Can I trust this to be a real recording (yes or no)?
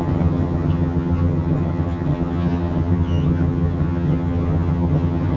no